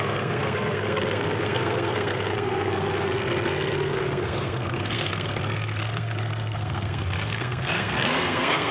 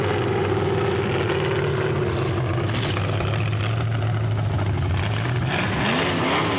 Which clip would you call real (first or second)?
second